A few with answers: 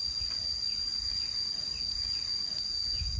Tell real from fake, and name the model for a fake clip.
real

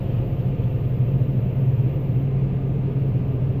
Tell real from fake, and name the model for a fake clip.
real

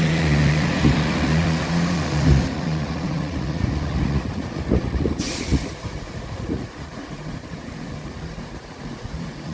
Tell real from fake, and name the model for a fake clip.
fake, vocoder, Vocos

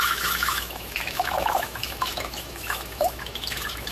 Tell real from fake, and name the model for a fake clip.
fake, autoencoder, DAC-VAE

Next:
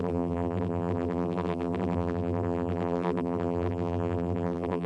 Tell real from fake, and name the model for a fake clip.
fake, vocoder, BigVGAN v2